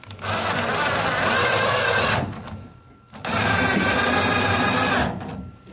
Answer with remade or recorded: recorded